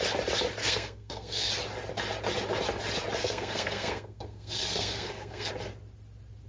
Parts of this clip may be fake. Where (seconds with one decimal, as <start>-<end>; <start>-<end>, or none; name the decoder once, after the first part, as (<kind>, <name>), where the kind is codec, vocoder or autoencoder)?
0.6-1.5 (codec, SNAC); 3.2-5.5